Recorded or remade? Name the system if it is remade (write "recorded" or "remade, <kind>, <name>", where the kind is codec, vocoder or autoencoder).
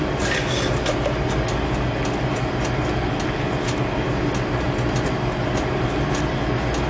recorded